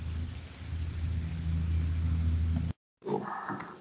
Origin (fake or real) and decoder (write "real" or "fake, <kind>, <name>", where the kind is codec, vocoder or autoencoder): real